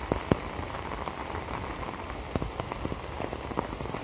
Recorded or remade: recorded